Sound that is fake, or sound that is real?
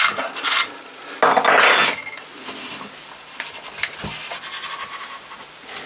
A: real